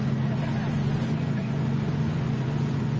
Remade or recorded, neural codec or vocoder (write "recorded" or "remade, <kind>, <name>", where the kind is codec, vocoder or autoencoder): remade, vocoder, Vocos